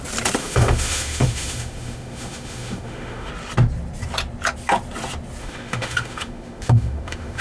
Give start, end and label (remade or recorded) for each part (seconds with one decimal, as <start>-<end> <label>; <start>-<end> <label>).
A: 0.0-0.4 recorded; 0.4-3.3 remade; 3.3-5.4 recorded; 5.4-7.4 remade